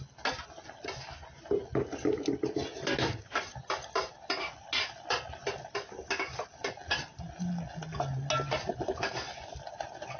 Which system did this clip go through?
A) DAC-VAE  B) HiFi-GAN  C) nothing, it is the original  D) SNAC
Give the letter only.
C